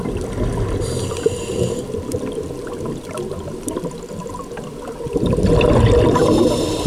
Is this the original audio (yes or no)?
yes